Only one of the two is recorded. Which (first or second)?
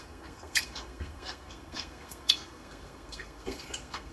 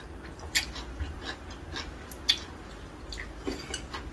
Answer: second